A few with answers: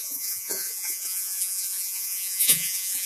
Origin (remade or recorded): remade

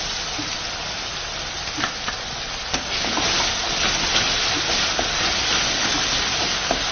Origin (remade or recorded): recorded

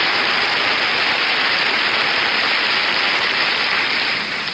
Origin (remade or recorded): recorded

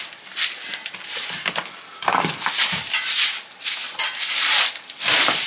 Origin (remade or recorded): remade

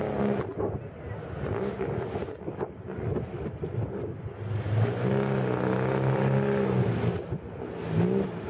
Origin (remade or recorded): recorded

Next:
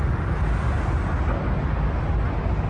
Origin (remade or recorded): recorded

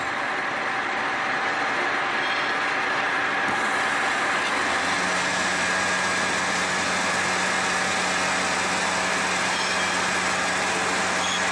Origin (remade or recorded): recorded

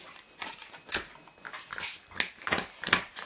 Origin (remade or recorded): recorded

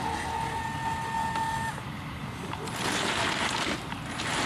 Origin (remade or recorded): recorded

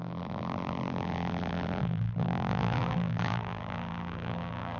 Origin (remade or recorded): remade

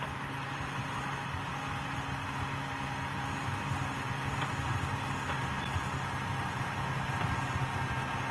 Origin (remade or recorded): recorded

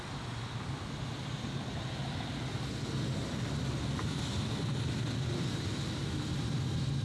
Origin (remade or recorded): recorded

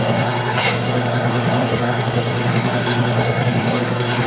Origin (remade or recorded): remade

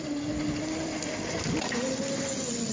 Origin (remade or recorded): recorded